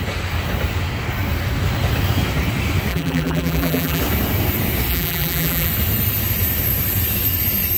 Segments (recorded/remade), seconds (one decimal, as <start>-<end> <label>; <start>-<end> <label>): 0.0-2.9 recorded; 2.9-4.0 remade; 4.0-4.9 recorded; 4.9-5.7 remade; 5.7-7.8 recorded